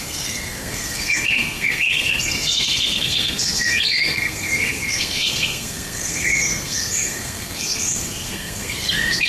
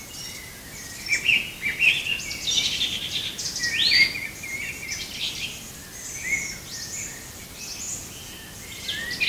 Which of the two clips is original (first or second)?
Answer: second